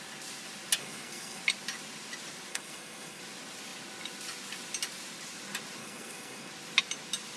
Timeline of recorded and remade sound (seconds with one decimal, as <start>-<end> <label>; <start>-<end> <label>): 0.0-0.8 recorded; 0.8-1.4 remade; 1.4-2.5 recorded; 2.5-3.2 remade; 3.2-5.8 recorded; 5.8-6.5 remade; 6.5-7.4 recorded